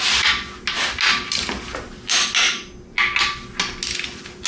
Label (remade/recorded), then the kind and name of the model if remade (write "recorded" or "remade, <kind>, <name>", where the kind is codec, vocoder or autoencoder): recorded